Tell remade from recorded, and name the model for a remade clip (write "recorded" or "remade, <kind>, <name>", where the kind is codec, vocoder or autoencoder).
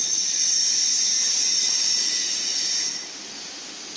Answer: recorded